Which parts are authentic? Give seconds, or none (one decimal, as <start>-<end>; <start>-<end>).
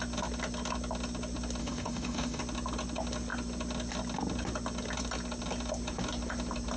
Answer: 0.0-1.6; 2.4-6.8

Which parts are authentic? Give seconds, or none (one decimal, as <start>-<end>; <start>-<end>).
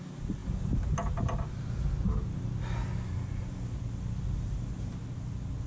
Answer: 0.0-5.7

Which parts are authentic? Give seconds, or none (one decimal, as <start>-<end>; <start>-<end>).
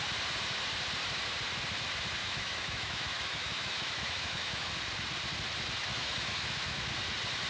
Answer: 0.0-2.2; 4.7-5.8; 6.8-7.5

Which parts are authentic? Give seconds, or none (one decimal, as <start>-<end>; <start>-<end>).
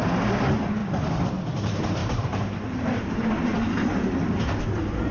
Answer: 0.0-2.0; 3.1-5.1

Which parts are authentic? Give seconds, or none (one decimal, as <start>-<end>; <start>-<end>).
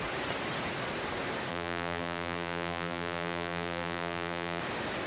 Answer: 0.0-1.5; 4.6-5.1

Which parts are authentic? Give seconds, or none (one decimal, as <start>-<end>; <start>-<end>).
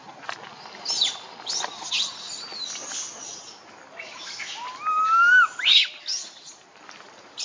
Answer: 0.0-7.4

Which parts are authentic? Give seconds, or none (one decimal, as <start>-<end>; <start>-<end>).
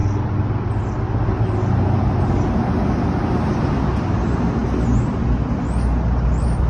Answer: 0.0-6.7